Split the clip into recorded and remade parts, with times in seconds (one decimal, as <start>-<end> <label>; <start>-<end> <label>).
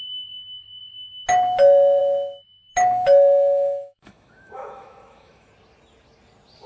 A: 0.0-2.7 recorded; 2.7-5.5 remade; 5.5-6.7 recorded